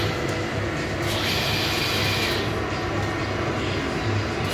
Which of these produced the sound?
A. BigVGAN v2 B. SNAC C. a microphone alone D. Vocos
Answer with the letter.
C